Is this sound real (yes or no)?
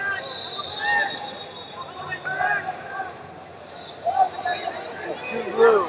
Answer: yes